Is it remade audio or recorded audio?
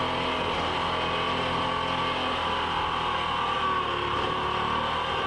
recorded